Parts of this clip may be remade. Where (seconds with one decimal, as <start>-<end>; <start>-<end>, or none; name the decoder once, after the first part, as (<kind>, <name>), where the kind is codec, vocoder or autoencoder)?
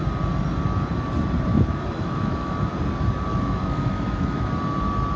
1.5-2.7 (autoencoder, DAC-VAE); 3.3-4.5